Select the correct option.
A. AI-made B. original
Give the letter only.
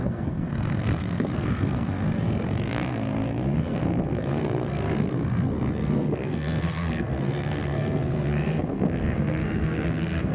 A